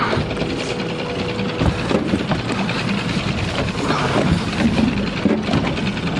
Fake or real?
real